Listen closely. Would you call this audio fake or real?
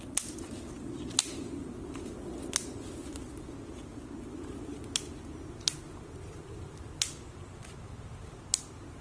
real